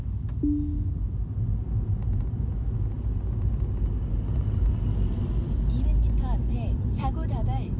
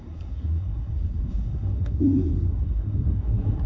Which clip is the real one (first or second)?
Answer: first